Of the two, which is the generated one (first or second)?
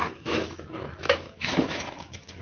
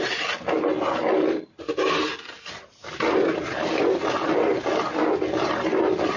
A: first